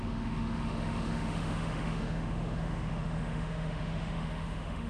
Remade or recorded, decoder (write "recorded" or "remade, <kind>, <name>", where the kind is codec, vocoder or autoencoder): remade, autoencoder, DAC-VAE